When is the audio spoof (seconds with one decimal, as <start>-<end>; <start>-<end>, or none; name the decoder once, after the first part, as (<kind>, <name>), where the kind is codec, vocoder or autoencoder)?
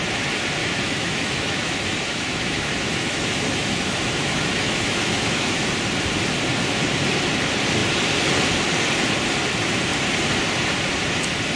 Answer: 0.6-5.6 (autoencoder, DAC-VAE)